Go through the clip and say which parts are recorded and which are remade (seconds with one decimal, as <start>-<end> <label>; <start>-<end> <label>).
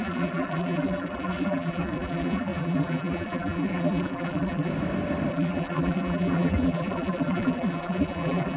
0.0-4.7 remade; 4.7-5.3 recorded; 5.3-8.6 remade